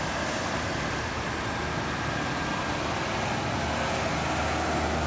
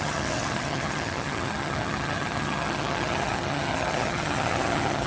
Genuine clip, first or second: first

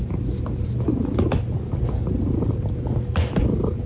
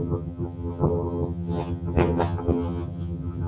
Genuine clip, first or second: first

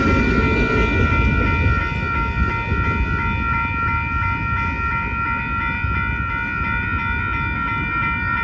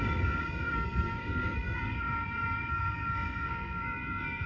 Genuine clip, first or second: first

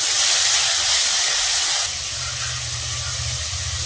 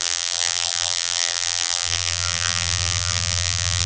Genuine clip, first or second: first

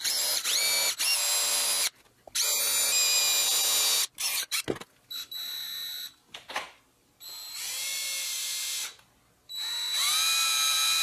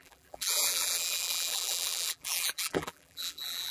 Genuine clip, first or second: first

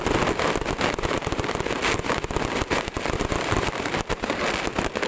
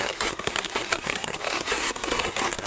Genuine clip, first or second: first